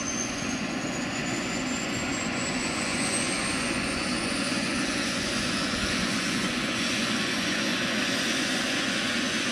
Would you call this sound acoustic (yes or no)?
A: no